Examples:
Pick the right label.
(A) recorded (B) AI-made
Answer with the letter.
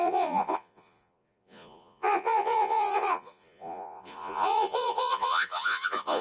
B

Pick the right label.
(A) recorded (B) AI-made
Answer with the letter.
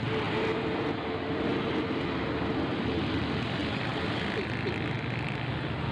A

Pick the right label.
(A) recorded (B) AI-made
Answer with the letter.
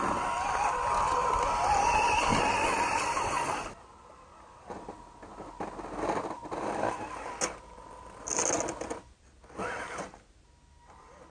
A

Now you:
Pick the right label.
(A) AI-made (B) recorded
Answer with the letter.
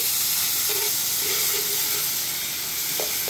B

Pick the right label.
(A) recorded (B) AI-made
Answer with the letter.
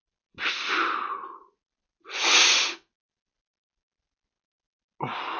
A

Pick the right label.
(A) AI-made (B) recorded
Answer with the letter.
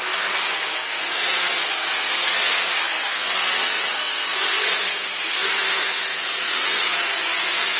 A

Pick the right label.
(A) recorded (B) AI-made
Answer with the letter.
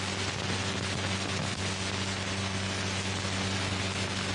A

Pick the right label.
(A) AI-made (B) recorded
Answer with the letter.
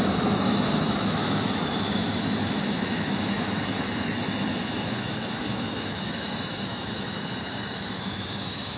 A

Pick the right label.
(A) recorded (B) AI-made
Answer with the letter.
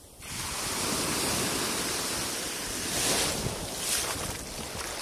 A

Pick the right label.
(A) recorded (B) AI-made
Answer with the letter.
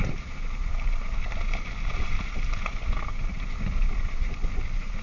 A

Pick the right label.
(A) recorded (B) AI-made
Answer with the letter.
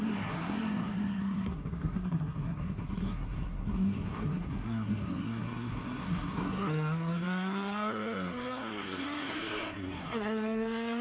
B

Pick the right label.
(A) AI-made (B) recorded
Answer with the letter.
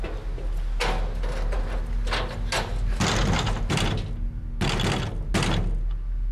B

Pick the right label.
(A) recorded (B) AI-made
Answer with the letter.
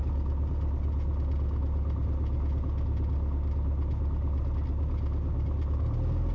A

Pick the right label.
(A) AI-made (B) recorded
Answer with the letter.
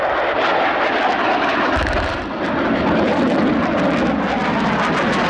B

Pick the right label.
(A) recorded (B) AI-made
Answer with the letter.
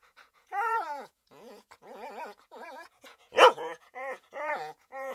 B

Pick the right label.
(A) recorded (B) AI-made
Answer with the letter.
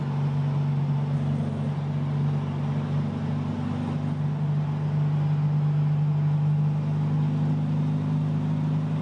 A